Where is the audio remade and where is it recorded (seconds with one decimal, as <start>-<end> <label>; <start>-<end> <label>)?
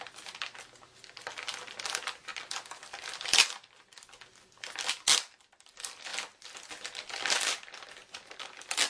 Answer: 0.0-8.9 recorded